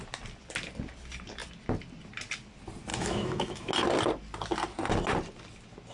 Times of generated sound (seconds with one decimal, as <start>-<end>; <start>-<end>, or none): 2.9-3.7